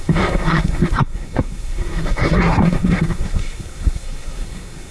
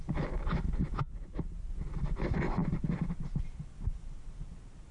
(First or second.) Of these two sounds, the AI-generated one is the first